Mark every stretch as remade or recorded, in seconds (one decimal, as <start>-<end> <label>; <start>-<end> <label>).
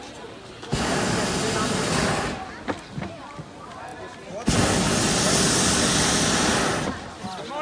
0.0-7.6 recorded